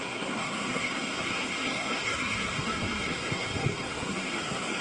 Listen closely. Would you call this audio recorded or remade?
remade